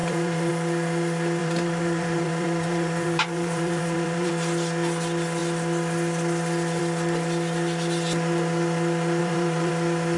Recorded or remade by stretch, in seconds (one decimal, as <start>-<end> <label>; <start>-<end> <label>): 0.0-0.5 remade; 0.5-1.4 recorded; 1.4-4.3 remade; 4.3-9.2 recorded; 9.2-9.7 remade; 9.7-10.2 recorded